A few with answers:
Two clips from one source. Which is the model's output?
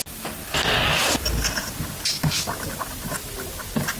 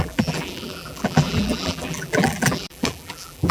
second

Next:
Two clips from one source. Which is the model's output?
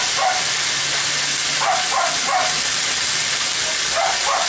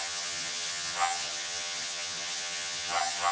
second